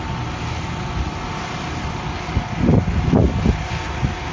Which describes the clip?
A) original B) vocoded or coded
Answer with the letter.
A